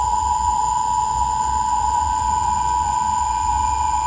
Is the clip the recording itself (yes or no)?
no